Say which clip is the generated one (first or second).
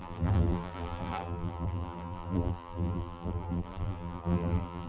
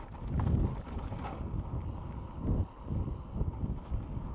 first